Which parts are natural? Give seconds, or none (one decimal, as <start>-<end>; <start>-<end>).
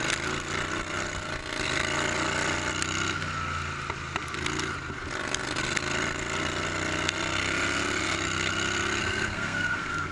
0.0-9.0